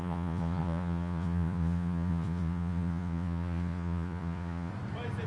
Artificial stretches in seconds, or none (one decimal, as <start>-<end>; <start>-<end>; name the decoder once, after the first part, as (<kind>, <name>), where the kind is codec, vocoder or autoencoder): 0.0-4.7 (vocoder, Vocos)